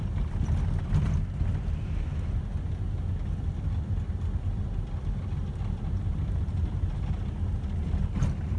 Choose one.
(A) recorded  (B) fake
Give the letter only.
A